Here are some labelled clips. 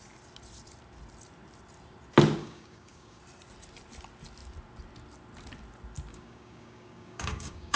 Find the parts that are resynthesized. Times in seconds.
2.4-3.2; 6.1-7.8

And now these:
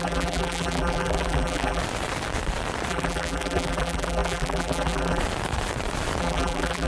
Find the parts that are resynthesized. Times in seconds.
0.0-1.8; 2.9-5.2; 6.2-6.9

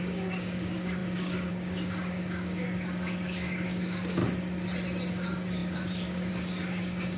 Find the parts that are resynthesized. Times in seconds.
0.0-4.2; 5.1-7.2

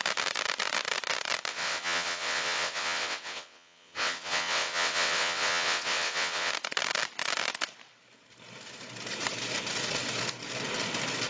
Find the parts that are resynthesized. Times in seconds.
1.5-6.5

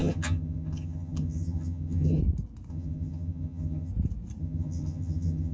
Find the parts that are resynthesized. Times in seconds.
0.0-2.2; 2.7-3.9; 4.4-5.5

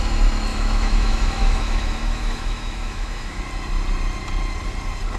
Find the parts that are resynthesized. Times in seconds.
0.5-3.4